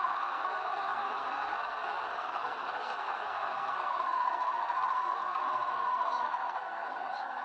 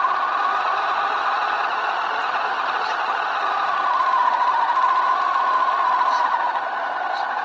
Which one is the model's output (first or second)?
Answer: first